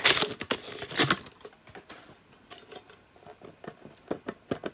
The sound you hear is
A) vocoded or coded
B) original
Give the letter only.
B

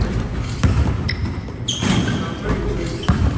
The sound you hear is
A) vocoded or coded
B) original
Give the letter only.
B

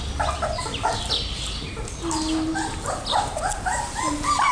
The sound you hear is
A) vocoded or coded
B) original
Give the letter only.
B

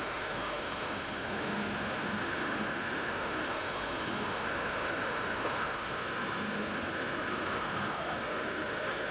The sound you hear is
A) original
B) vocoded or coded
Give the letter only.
B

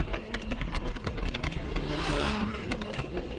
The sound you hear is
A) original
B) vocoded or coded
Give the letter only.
B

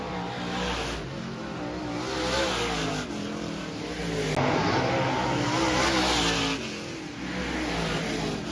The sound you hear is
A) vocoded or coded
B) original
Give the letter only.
B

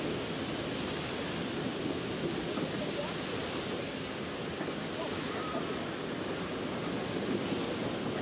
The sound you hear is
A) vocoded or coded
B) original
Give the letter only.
B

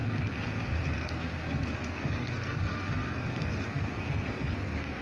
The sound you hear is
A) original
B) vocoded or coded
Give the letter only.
B